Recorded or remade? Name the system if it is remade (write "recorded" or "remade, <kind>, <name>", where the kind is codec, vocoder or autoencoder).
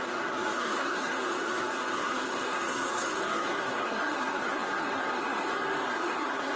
remade, codec, SNAC